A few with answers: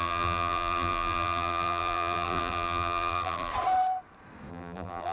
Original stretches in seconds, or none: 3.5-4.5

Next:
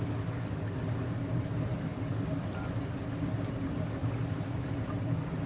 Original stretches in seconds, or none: 0.0-1.9; 2.7-5.5